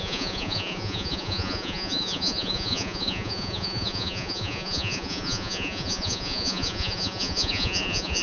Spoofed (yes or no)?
yes